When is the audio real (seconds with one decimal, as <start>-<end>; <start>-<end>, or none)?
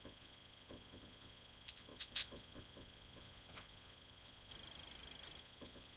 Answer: 4.5-5.4